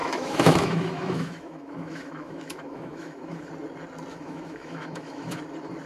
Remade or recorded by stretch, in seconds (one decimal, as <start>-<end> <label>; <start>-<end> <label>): 0.0-3.5 remade; 3.5-4.1 recorded; 4.1-5.4 remade; 5.4-5.9 recorded